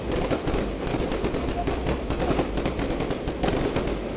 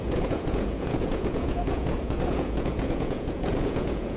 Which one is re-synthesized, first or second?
second